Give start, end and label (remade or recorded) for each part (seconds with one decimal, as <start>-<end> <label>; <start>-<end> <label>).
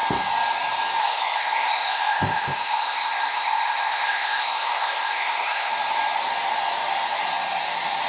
0.0-1.0 recorded; 1.0-5.7 remade; 5.7-8.1 recorded